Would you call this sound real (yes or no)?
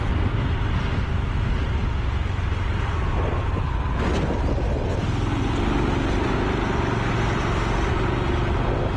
yes